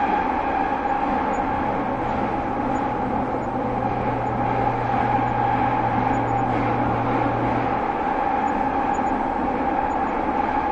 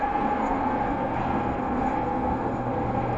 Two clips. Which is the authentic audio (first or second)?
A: first